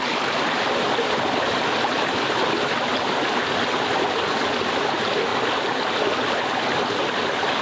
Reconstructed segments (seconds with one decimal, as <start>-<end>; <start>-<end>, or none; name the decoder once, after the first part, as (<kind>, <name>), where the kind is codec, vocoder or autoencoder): none